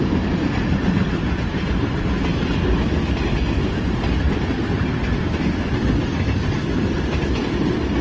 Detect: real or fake real